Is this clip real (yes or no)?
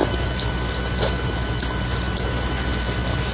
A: yes